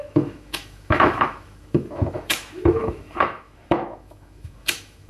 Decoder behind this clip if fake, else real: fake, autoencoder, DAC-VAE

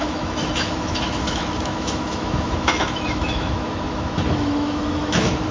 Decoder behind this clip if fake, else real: fake, autoencoder, DAC-VAE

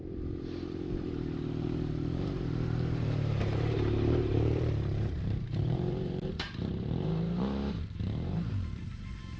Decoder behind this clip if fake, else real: fake, vocoder, BigVGAN v2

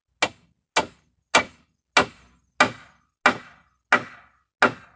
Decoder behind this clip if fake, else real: real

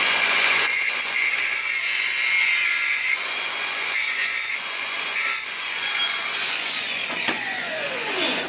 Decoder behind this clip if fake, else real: fake, vocoder, Vocos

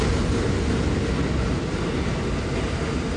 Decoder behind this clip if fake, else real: real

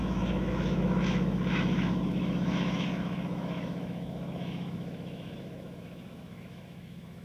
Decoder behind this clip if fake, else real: fake, autoencoder, DAC-VAE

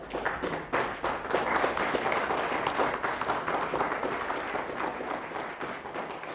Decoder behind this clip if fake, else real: real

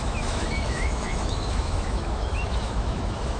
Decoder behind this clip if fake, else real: fake, autoencoder, DAC-VAE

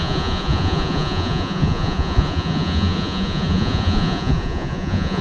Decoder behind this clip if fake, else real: fake, vocoder, Vocos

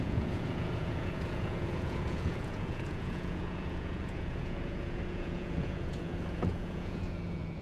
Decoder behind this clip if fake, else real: fake, vocoder, Vocos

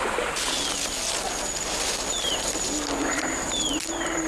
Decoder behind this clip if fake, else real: real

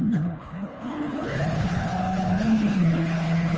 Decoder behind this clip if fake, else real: fake, codec, HILCodec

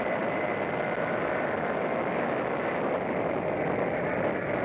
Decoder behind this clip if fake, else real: real